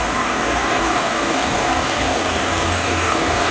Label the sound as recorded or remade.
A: remade